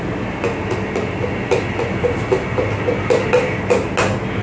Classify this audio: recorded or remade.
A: recorded